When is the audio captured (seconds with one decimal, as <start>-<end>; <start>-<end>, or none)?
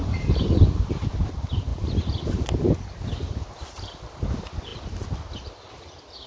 0.6-6.3